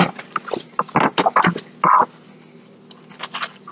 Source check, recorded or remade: recorded